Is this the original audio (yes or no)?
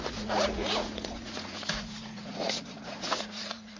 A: no